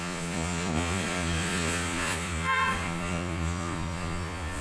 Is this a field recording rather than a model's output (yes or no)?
no